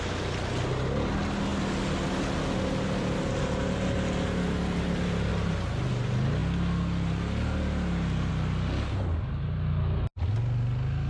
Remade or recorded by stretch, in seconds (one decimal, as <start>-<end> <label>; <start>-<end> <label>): 0.0-11.1 recorded